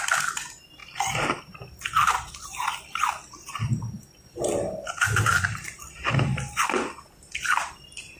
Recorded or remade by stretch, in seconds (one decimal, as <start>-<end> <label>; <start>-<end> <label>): 0.0-0.8 remade; 0.8-2.6 recorded; 2.6-8.2 remade